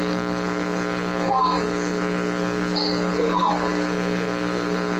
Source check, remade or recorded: remade